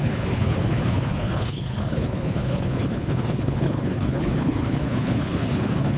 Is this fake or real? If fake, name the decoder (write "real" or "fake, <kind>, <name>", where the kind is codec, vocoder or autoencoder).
fake, codec, HILCodec